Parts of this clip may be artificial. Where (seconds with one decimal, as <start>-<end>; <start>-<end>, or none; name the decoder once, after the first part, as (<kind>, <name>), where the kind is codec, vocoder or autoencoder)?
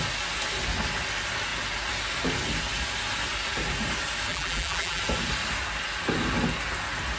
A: 4.3-5.0 (vocoder, BigVGAN v2)